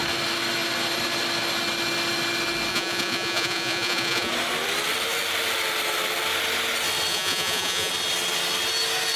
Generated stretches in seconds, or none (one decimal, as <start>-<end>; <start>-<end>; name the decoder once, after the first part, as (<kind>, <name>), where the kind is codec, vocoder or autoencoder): 2.7-4.3 (vocoder, Vocos); 7.1-7.9